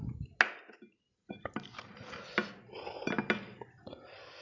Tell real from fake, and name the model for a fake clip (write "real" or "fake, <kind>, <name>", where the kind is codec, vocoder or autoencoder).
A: real